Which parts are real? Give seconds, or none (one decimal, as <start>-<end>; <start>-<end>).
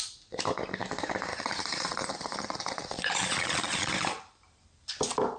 0.0-1.3; 3.9-5.4